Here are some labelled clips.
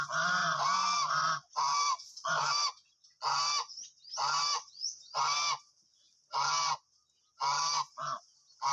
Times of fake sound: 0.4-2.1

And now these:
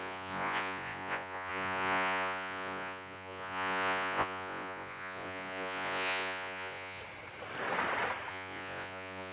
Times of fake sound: 0.0-7.0; 8.3-9.3

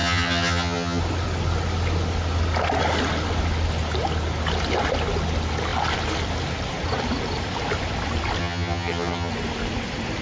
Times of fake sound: 0.0-1.0; 8.4-9.3